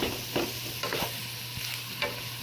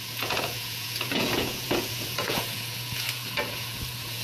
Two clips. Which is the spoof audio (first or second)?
second